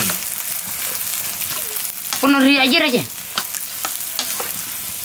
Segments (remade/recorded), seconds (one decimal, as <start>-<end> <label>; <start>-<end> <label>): 0.0-5.0 recorded